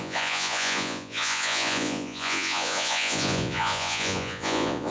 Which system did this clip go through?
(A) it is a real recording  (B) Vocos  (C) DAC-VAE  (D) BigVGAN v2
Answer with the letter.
B